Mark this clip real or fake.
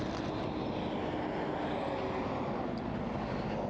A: real